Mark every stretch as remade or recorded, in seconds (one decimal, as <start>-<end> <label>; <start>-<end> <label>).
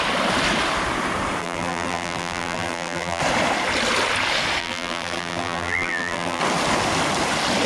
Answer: 0.0-1.4 recorded; 1.4-3.2 remade; 3.2-4.6 recorded; 4.6-6.4 remade; 6.4-7.7 recorded